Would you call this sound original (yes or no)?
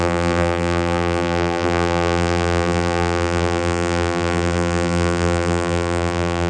no